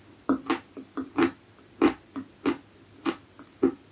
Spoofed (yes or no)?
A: no